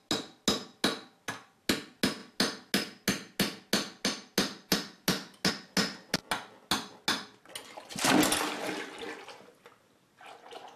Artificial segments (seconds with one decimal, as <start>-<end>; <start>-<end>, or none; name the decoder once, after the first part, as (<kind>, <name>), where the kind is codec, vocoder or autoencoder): none